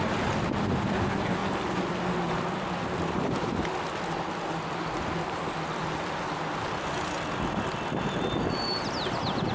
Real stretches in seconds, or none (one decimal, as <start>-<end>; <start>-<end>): 0.0-9.5